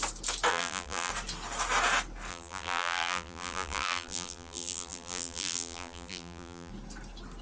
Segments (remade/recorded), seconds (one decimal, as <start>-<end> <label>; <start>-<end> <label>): 0.0-0.5 recorded; 0.5-1.1 remade; 1.1-2.3 recorded; 2.3-6.7 remade; 6.7-7.4 recorded